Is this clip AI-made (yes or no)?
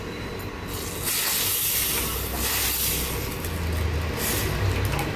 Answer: no